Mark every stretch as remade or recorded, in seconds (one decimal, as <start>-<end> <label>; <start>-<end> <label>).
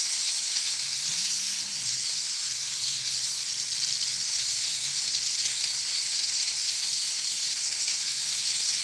0.0-3.4 remade; 3.4-4.1 recorded; 4.1-8.8 remade